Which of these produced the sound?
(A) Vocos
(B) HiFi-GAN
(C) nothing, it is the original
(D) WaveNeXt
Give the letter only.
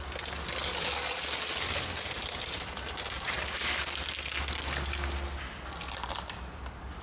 C